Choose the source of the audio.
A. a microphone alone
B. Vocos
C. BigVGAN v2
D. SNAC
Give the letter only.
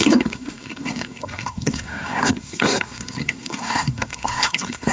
D